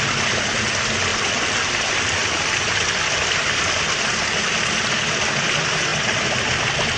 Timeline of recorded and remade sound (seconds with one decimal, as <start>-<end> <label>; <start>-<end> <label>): 0.0-7.0 recorded